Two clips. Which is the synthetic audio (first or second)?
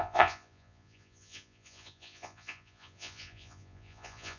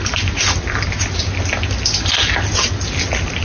first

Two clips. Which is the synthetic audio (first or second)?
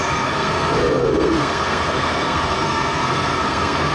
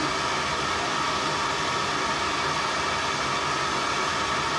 first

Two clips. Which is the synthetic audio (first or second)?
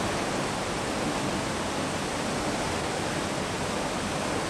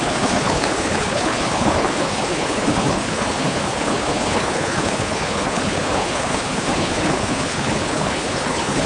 second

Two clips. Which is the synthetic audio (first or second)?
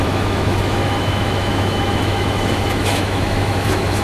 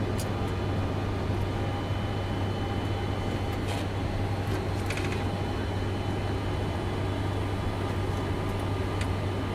first